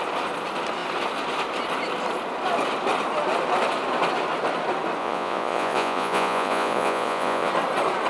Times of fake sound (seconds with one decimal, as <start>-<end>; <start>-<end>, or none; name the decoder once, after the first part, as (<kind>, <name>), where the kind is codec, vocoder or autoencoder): 5.0-7.5 (vocoder, Vocos)

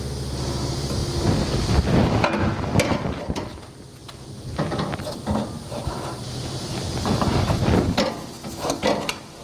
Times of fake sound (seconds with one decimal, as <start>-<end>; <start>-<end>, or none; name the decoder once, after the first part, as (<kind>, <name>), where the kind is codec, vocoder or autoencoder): 4.0-7.4 (vocoder, BigVGAN v2)

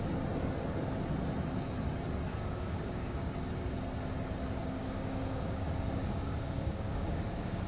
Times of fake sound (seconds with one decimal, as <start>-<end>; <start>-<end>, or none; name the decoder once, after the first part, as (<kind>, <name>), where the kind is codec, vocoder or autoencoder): 2.3-3.3 (codec, DAC); 4.6-7.7

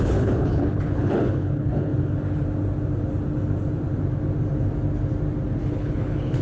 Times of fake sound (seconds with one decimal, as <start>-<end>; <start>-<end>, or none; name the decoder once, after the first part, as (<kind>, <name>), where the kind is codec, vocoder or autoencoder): 0.0-1.9 (codec, HILCodec); 5.7-6.4

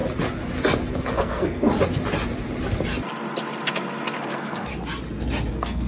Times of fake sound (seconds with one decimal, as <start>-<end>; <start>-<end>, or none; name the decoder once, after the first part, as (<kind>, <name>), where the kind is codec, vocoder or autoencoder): 0.9-1.7 (codec, SNAC); 4.2-4.7; 5.5-5.9

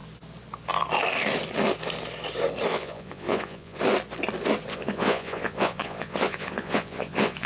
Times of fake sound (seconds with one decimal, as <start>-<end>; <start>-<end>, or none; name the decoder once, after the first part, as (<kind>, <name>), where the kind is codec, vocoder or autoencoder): 2.7-3.8 (vocoder, Vocos); 4.7-7.5